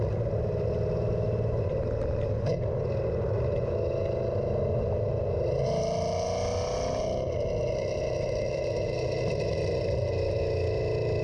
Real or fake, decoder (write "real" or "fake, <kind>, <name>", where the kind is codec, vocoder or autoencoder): real